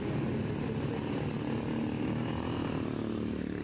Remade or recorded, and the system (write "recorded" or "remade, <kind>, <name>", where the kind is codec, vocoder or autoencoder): recorded